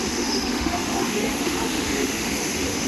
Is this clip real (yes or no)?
no